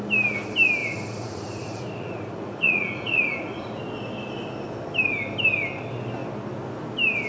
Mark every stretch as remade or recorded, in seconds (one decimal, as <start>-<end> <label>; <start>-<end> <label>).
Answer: 0.0-0.8 recorded; 0.8-3.8 remade; 3.8-7.3 recorded